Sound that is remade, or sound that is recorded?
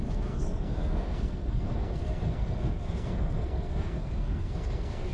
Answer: remade